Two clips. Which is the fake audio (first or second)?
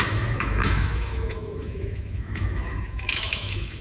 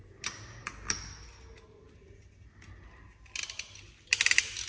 first